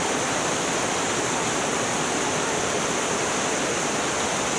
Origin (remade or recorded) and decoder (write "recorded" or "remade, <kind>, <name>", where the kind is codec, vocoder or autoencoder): recorded